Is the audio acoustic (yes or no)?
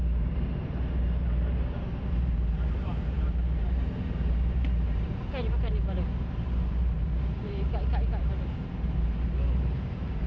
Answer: no